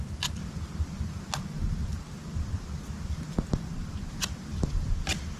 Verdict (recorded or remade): recorded